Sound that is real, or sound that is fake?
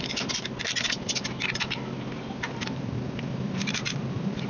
real